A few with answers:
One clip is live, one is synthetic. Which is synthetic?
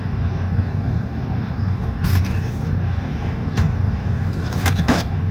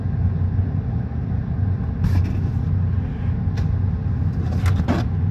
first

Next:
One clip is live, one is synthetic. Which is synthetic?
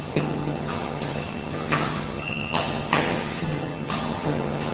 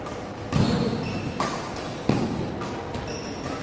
first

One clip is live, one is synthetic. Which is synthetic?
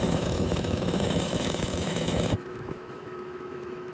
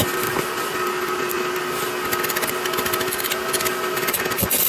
first